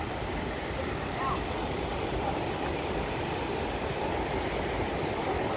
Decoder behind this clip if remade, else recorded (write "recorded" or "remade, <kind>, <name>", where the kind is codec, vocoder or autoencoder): recorded